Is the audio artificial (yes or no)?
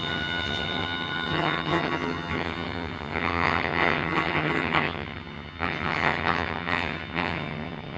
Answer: yes